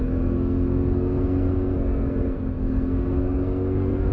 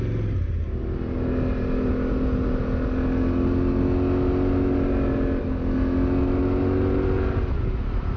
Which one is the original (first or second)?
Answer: second